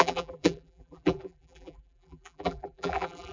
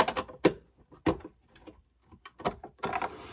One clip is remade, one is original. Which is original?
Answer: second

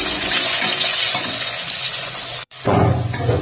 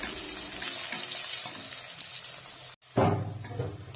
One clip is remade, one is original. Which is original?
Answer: second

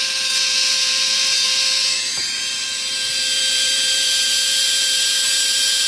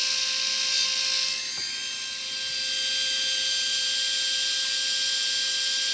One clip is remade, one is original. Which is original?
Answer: second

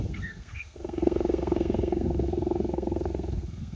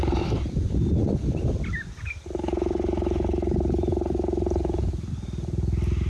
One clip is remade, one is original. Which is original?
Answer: second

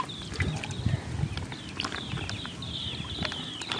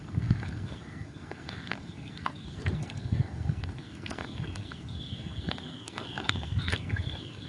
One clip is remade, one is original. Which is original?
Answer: first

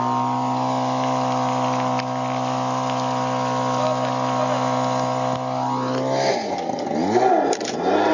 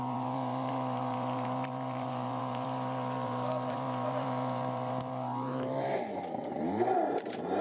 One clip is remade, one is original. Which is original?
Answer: first